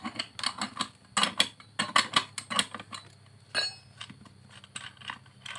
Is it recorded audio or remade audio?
recorded